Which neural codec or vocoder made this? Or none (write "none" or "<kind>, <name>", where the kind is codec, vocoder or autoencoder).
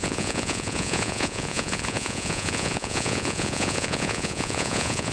vocoder, Vocos